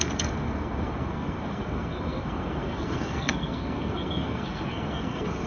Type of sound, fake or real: fake